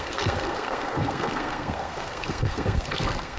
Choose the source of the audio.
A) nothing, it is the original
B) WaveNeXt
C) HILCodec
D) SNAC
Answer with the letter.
D